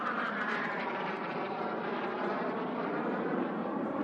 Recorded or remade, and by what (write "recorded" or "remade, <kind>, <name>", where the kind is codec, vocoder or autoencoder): remade, vocoder, BigVGAN v2